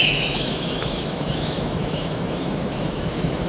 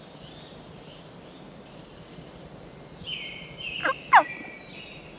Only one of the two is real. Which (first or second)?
second